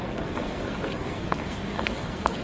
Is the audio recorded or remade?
remade